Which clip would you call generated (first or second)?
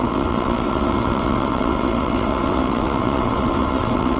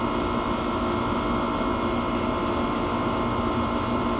first